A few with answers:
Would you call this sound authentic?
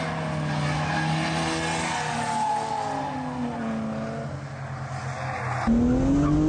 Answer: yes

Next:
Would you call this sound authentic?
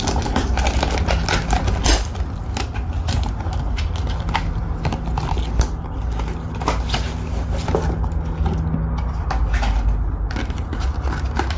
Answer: yes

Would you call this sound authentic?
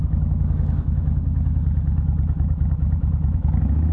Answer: no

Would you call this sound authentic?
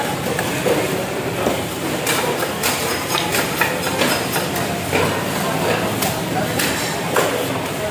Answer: yes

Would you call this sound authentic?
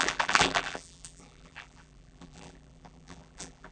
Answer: no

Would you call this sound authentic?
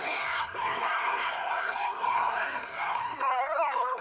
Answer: no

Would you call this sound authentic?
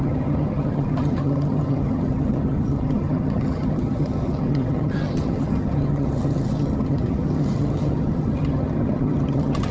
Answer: no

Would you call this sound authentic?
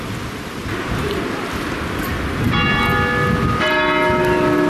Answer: yes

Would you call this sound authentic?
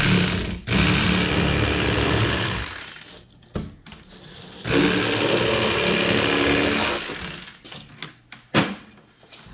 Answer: yes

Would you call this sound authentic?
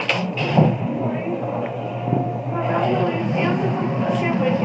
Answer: yes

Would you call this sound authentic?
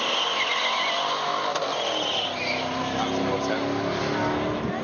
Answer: yes